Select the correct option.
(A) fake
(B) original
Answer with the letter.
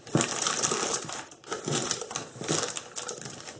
B